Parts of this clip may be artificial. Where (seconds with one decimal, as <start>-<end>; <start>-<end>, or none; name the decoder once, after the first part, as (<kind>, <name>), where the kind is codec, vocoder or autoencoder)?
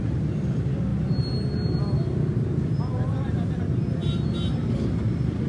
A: none